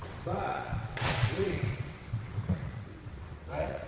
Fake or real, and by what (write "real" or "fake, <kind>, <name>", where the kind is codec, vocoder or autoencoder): fake, vocoder, WaveNeXt